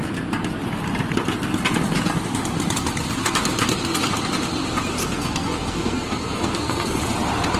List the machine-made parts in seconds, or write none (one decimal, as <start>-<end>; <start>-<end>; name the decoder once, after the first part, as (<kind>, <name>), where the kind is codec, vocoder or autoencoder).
5.0-7.0 (codec, SNAC)